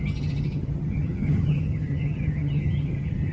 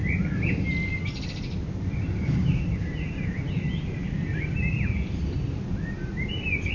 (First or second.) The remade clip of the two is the first